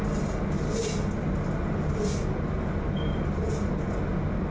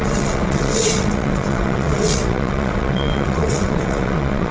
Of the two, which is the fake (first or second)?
second